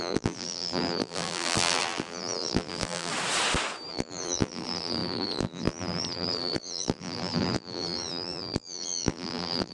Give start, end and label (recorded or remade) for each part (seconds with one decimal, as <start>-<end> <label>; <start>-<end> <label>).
0.0-3.1 remade; 3.1-3.9 recorded; 3.9-9.7 remade